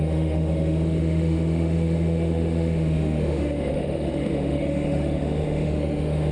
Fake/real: fake